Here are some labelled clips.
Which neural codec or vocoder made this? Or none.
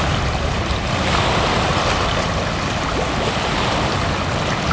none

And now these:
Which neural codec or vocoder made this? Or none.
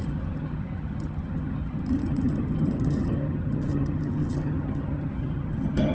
vocoder, HiFi-GAN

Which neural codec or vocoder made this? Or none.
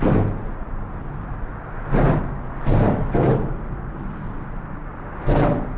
none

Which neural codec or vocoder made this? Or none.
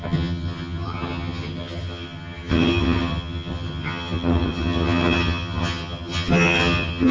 vocoder, HiFi-GAN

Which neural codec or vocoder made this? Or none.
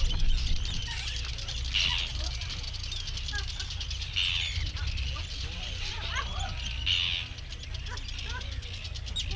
none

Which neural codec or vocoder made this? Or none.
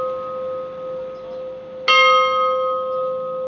none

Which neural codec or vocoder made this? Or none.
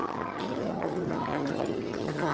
vocoder, HiFi-GAN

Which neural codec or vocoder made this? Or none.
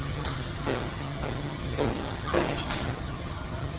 vocoder, HiFi-GAN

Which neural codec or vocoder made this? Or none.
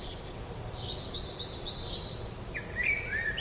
none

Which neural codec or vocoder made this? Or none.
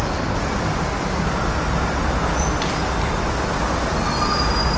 none